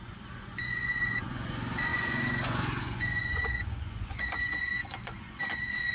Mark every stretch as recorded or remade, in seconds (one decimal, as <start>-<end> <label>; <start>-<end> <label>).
0.0-5.9 remade